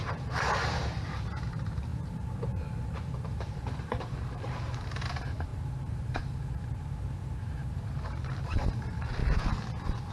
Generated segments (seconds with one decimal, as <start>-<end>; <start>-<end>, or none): 0.0-9.2